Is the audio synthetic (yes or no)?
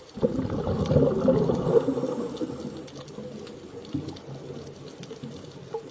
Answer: no